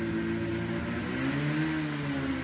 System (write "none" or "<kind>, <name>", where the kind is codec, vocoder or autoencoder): none